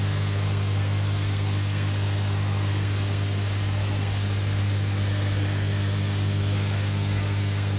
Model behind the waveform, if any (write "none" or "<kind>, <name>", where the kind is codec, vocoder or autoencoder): codec, SNAC